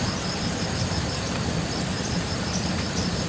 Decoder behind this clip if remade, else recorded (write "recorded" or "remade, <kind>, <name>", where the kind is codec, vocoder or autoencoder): remade, vocoder, BigVGAN v2